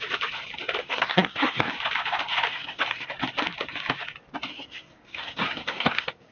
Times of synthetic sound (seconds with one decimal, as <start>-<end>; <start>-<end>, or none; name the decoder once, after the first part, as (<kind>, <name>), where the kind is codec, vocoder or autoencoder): 0.8-1.7 (codec, SNAC); 2.5-3.1; 4.5-6.3